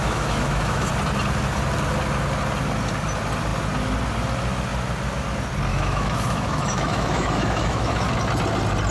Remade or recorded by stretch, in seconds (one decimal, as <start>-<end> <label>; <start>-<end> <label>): 0.0-0.9 remade; 0.9-5.7 recorded; 5.7-8.1 remade; 8.1-8.9 recorded